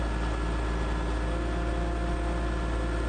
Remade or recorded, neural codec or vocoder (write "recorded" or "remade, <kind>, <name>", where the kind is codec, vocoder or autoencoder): recorded